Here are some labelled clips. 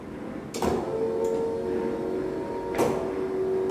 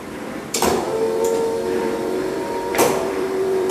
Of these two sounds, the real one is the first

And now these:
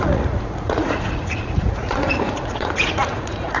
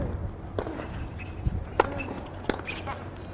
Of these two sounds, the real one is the second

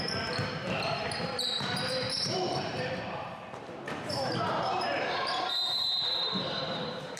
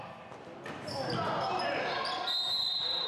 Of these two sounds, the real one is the second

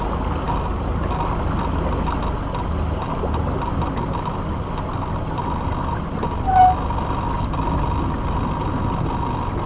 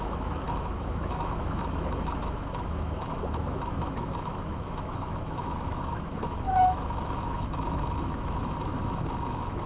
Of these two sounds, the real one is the first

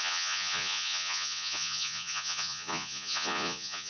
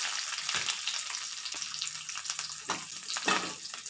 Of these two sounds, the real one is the second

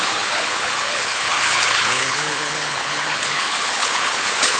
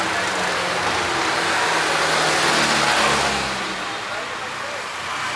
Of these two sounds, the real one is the second